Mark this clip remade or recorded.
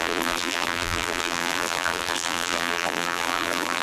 remade